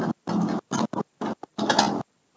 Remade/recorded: recorded